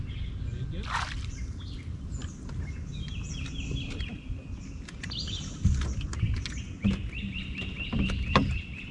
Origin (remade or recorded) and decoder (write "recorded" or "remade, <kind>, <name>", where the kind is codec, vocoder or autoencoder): recorded